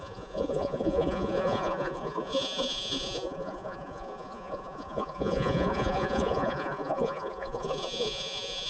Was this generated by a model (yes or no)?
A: yes